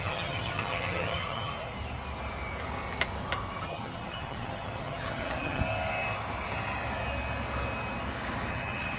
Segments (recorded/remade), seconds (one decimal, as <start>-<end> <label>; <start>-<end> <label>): 0.0-1.5 remade; 1.5-3.6 recorded; 3.6-5.6 remade; 5.6-8.5 recorded; 8.5-9.0 remade